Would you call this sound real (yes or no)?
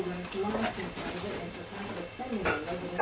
yes